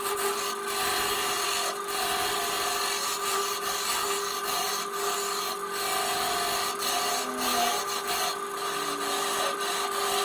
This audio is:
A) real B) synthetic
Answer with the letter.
A